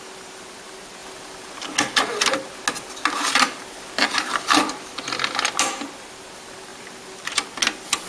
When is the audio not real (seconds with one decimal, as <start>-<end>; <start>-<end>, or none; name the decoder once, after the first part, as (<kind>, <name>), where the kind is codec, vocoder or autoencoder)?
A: none